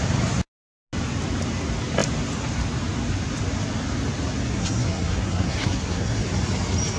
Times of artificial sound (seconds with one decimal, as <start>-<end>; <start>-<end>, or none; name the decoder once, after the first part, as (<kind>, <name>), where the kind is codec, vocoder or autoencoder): 4.5-6.2 (codec, SNAC)